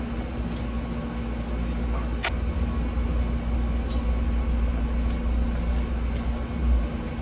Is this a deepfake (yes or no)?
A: no